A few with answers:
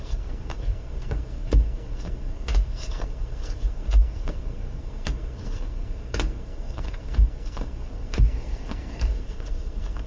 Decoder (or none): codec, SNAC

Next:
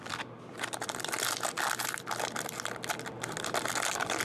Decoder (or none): none